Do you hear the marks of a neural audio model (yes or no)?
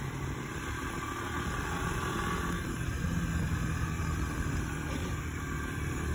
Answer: no